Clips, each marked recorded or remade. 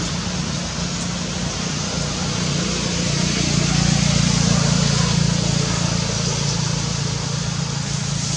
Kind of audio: recorded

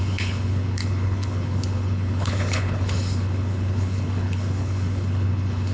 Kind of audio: remade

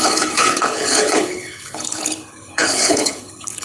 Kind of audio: remade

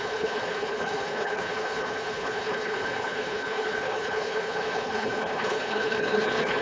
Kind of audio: remade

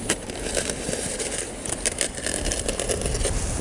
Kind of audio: recorded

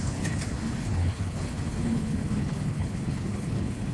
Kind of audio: remade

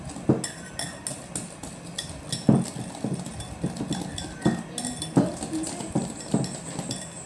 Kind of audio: recorded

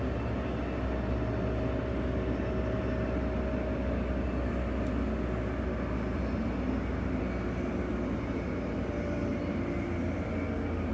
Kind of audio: recorded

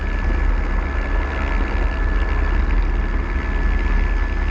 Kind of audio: recorded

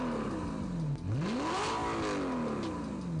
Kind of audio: recorded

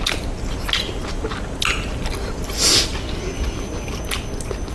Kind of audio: recorded